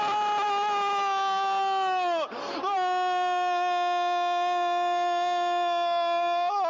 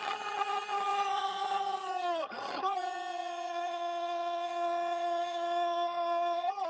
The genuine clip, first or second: first